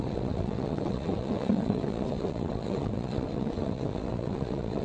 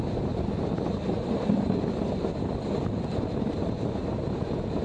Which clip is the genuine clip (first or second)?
second